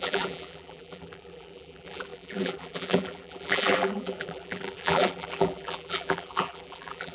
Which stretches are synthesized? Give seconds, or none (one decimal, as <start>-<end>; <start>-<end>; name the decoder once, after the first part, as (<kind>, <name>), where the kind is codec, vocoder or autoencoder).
0.0-7.1 (vocoder, BigVGAN v2)